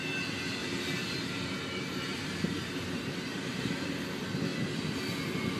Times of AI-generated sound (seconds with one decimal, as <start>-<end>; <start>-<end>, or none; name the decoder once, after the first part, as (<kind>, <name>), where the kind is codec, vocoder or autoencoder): 0.6-4.0 (vocoder, BigVGAN v2)